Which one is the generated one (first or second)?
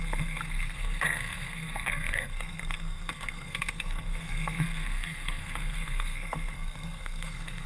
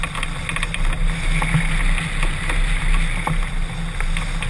first